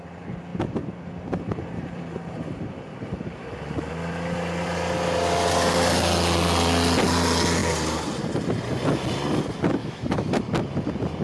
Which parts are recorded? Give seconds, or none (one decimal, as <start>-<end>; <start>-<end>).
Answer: 0.0-9.8; 10.3-11.2

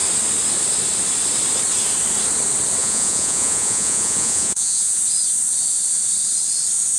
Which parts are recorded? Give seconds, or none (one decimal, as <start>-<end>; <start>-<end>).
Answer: 0.0-2.8; 5.0-7.0

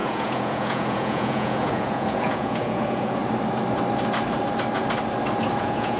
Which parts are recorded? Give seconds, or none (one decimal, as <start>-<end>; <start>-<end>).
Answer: 3.2-5.6

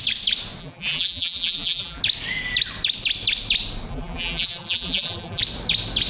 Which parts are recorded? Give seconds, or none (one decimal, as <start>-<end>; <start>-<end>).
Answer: 0.0-0.6; 2.0-3.9; 5.4-6.1